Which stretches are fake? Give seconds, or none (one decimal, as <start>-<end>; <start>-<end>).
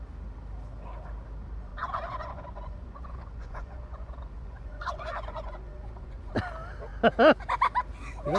1.7-6.3